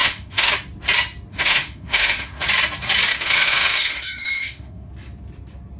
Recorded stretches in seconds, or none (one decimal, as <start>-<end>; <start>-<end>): 0.5-1.3; 2.4-3.1; 4.9-5.8